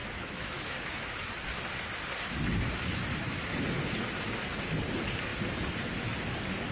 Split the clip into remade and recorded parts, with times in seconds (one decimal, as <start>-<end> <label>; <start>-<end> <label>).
0.0-1.3 remade; 1.3-3.1 recorded; 3.1-3.6 remade; 3.6-6.7 recorded